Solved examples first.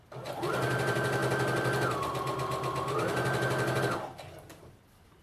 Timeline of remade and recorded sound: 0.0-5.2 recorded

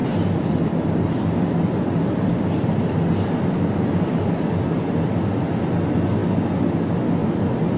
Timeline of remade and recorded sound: 0.0-7.8 recorded